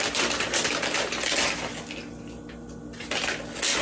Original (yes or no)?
yes